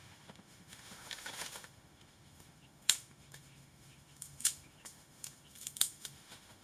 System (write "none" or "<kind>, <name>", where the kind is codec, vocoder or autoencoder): autoencoder, DAC-VAE